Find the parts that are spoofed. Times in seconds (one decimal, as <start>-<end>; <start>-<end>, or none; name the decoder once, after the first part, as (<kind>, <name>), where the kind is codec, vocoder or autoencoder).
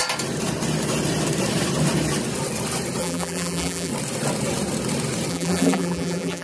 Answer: 3.0-3.9 (vocoder, BigVGAN v2); 5.3-6.4